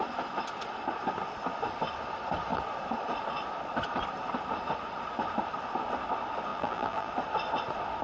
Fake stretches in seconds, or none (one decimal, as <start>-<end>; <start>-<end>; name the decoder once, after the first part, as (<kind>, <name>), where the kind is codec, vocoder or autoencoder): 6.5-7.1 (vocoder, BigVGAN v2)